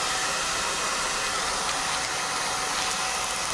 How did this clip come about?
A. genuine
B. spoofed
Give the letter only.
A